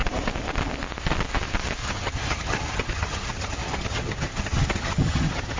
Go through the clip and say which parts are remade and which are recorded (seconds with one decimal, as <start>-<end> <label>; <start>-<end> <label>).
0.0-1.8 recorded; 1.8-5.6 remade